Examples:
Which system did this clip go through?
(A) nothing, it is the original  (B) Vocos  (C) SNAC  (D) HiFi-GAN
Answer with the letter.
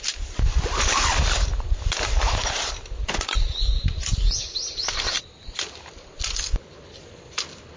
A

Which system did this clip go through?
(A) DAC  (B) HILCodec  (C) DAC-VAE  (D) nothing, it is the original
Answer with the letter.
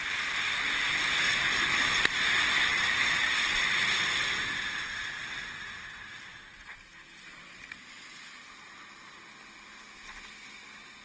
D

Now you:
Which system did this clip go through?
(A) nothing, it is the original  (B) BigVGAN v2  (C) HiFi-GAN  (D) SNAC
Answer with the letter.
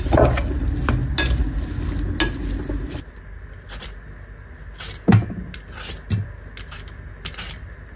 A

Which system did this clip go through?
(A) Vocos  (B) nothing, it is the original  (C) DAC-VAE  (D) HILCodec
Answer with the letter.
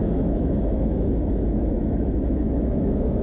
C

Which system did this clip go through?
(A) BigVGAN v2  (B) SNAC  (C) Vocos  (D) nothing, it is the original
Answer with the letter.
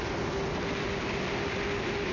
D